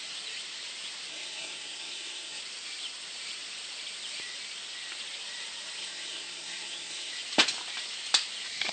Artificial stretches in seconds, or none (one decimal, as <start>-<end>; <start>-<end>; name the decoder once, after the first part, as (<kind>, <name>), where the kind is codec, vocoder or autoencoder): 1.1-2.4 (codec, SNAC); 5.8-7.1